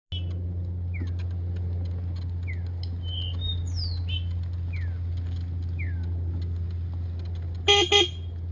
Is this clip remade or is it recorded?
recorded